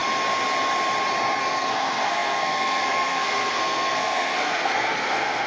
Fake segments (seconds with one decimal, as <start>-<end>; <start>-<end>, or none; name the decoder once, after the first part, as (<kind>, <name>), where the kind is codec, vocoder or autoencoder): 1.4-5.5 (codec, SNAC)